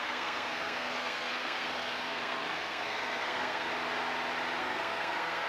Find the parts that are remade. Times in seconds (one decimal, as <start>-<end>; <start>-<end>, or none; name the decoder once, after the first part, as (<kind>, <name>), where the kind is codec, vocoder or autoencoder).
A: 0.0-3.7 (codec, SNAC); 4.6-5.5